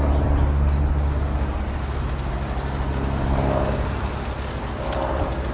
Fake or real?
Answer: real